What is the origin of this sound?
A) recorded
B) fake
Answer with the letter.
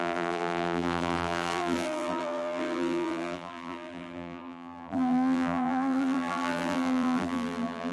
B